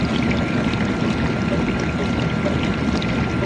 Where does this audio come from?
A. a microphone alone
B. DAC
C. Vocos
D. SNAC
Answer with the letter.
A